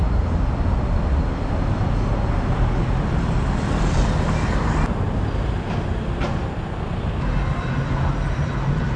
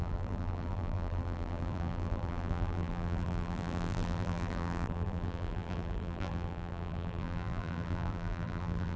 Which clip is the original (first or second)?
first